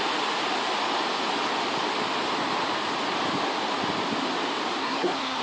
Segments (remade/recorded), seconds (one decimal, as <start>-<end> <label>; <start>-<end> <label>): 0.0-4.8 recorded; 4.8-5.4 remade